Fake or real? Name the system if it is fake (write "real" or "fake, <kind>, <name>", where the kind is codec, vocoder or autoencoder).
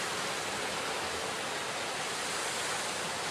real